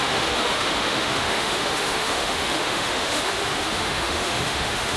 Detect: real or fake fake